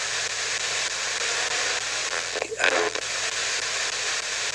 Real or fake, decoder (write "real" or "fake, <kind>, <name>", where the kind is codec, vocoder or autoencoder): real